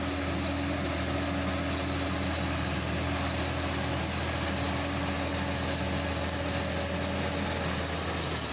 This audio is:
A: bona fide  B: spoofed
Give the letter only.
A